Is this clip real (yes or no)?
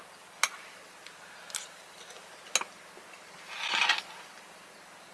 yes